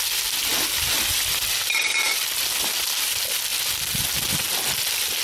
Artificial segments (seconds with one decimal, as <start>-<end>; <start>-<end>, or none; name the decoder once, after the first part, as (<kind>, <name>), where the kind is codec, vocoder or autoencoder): none